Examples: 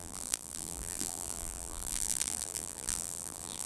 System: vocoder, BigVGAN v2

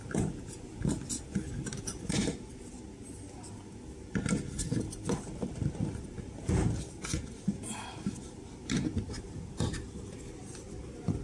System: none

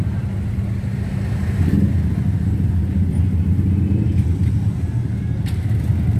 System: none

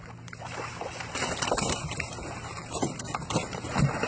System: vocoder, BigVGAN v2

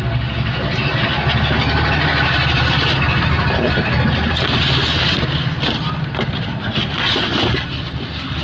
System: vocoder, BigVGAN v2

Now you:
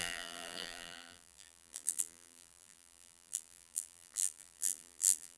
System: vocoder, BigVGAN v2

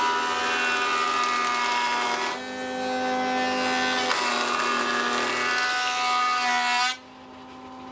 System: none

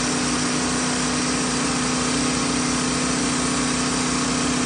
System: none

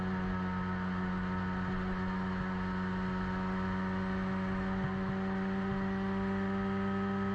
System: none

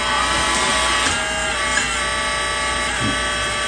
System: none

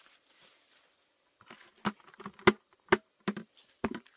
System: none